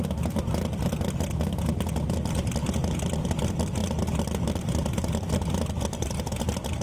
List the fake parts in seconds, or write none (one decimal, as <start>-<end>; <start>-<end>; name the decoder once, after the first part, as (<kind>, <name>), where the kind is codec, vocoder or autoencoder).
none